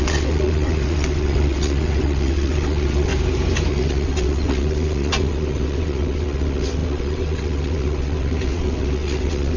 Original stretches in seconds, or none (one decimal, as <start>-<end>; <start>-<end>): 3.1-3.7